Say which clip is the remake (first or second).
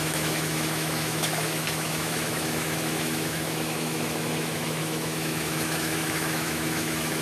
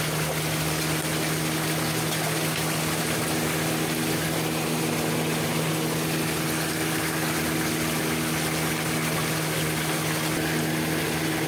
first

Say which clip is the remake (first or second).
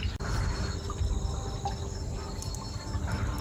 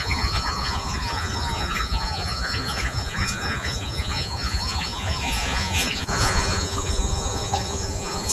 second